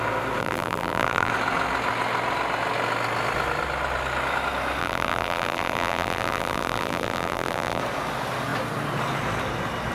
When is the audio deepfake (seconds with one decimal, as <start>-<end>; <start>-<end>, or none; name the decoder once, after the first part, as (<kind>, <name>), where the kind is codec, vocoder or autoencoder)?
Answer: 0.4-1.3 (vocoder, BigVGAN v2); 4.8-7.8